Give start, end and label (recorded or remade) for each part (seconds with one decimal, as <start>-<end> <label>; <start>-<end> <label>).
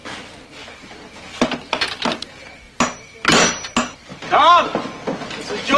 0.0-5.8 recorded